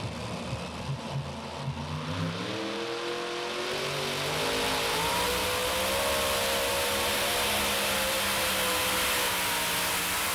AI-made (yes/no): no